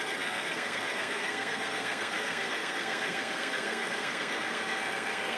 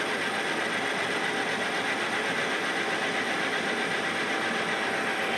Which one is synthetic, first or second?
first